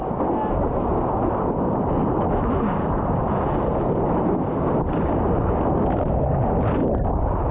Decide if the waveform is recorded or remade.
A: recorded